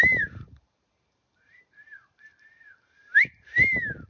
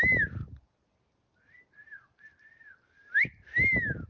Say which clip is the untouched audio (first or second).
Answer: second